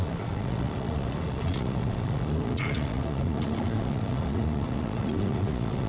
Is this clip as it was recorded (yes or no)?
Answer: no